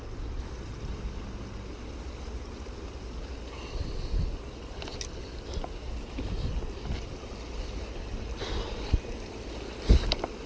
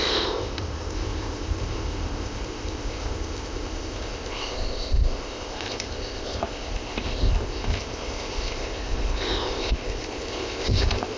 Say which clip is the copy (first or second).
second